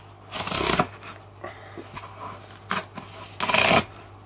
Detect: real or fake real